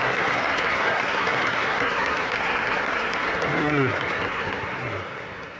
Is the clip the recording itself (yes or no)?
no